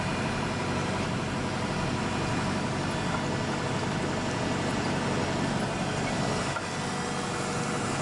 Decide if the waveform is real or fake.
real